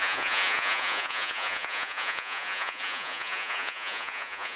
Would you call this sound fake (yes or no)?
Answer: yes